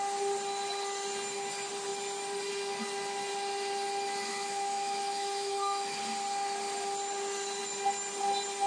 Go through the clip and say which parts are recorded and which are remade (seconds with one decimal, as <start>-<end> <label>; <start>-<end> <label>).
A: 0.0-4.3 recorded; 4.3-6.0 remade; 6.0-8.7 recorded